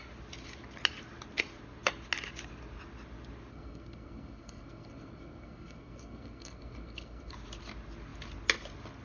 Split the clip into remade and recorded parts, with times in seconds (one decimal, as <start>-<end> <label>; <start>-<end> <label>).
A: 0.0-3.5 recorded; 3.5-7.3 remade; 7.3-9.0 recorded